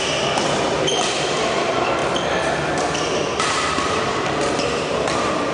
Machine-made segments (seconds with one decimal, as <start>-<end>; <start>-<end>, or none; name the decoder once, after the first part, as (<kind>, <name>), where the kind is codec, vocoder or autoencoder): 0.0-2.0 (vocoder, BigVGAN v2); 3.4-5.5